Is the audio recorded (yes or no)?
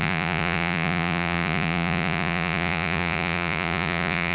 no